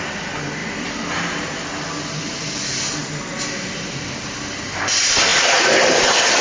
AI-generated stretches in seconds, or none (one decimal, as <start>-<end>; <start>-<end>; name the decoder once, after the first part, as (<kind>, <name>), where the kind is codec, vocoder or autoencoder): none